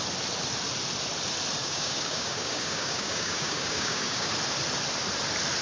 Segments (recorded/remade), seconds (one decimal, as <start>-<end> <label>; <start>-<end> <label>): 0.0-1.6 recorded; 1.6-4.3 remade; 4.3-5.6 recorded